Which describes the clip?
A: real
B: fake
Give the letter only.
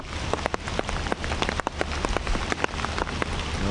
A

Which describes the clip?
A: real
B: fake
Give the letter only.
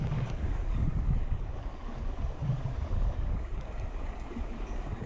B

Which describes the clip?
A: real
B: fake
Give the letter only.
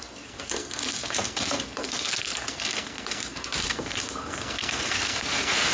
B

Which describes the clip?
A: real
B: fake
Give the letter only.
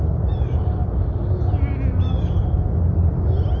A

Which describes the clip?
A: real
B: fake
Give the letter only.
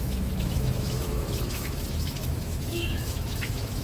B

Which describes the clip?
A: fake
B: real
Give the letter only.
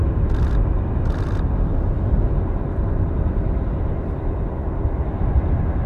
B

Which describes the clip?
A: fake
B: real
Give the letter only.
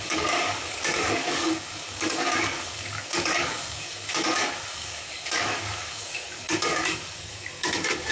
A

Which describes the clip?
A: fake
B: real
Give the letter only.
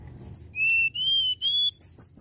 B